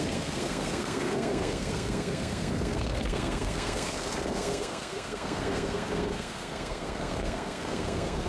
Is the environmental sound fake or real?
fake